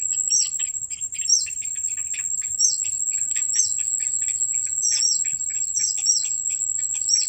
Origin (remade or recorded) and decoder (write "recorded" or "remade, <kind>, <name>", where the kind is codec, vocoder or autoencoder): recorded